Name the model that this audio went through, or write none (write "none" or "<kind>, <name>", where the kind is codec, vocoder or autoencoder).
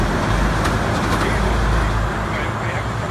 none